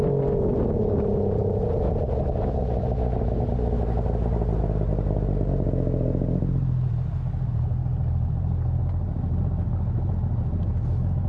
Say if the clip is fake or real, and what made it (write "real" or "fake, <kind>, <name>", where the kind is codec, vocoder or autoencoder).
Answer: real